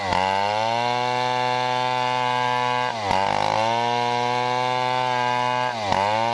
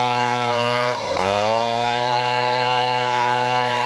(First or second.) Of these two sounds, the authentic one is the first